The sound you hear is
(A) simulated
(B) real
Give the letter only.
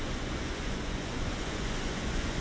A